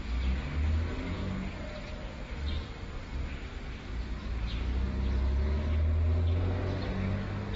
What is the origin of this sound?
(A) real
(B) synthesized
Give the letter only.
A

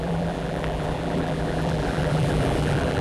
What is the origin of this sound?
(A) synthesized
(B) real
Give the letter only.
A